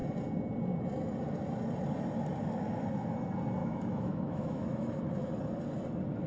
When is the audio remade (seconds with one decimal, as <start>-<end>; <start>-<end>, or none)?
3.6-5.0